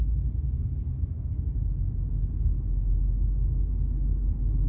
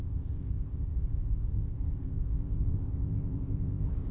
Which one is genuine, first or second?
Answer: first